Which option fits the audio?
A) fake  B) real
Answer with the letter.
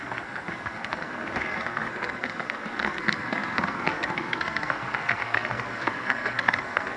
A